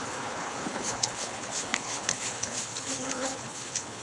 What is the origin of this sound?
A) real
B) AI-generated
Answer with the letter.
B